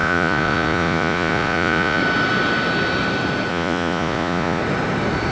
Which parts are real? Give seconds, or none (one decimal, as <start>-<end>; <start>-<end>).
2.0-3.5; 4.6-5.3